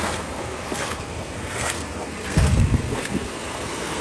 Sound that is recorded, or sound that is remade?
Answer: remade